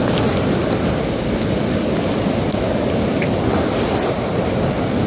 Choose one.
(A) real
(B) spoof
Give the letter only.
A